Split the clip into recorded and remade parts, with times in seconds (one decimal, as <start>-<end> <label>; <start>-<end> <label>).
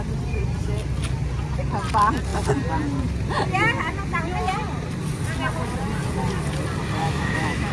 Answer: 0.0-7.0 recorded; 7.0-7.7 remade